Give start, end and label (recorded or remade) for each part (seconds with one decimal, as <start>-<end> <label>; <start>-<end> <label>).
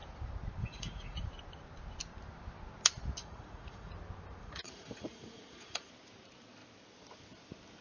0.0-0.6 recorded; 0.6-1.3 remade; 1.3-3.2 recorded; 3.2-3.9 remade; 3.9-4.4 recorded; 4.4-5.9 remade; 5.9-7.8 recorded